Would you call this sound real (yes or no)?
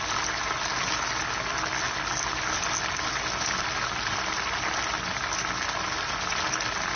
yes